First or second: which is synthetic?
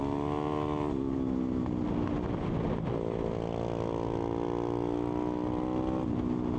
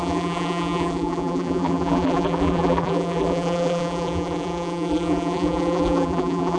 second